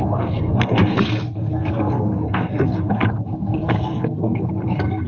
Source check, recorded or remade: remade